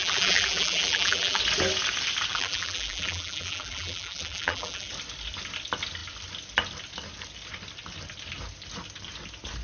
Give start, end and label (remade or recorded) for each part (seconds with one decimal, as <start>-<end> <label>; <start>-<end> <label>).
0.0-1.4 remade; 1.4-2.3 recorded; 2.3-4.9 remade; 4.9-9.6 recorded